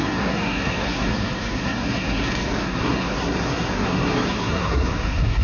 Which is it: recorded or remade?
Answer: remade